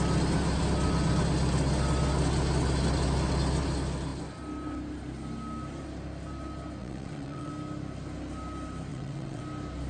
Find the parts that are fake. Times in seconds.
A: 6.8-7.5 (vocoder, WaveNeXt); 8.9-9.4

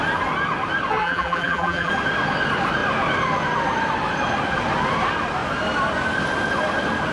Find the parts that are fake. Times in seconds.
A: 1.0-1.9 (vocoder, BigVGAN v2)